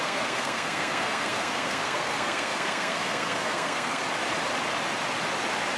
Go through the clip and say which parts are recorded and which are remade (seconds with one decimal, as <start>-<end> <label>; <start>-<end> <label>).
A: 0.0-4.0 remade; 4.0-5.8 recorded